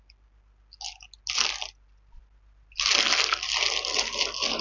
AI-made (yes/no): no